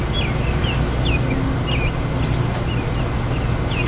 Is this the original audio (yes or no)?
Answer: yes